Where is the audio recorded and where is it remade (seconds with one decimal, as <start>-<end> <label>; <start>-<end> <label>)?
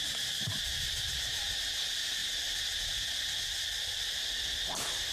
0.0-5.1 recorded